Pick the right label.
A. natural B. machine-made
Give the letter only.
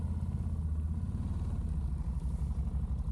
A